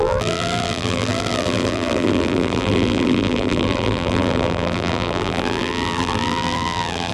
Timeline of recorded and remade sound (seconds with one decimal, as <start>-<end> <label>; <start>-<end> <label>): 0.0-7.1 remade